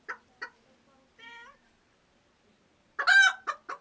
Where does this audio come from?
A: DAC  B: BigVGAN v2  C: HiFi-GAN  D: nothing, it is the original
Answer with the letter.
D